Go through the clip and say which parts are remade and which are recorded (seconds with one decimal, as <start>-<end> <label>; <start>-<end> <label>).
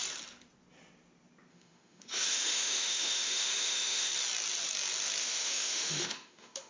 0.0-1.5 recorded; 1.5-4.1 remade; 4.1-5.2 recorded; 5.2-6.7 remade